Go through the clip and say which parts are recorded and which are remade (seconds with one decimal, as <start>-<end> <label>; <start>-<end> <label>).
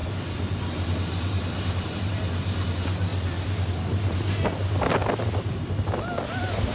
0.0-6.7 recorded